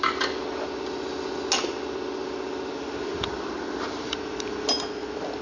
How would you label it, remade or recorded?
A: recorded